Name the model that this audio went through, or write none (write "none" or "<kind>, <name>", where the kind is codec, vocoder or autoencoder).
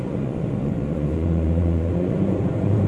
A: vocoder, Vocos